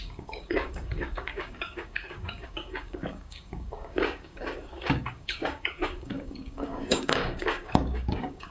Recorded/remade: remade